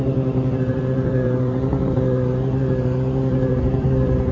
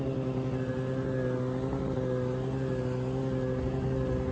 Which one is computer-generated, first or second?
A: first